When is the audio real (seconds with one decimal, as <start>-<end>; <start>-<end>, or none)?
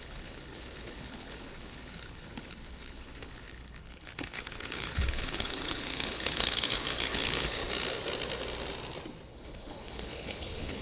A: 7.6-9.3